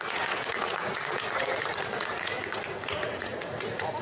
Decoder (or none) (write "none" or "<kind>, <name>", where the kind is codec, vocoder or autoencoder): vocoder, Vocos